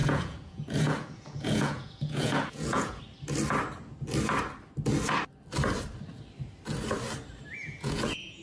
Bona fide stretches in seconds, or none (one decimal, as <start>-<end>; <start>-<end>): 3.0-7.5